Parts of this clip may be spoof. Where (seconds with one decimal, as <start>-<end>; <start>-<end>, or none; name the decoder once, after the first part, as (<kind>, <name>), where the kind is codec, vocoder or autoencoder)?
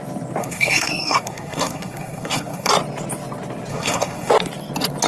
0.4-2.7 (codec, SNAC); 3.7-4.3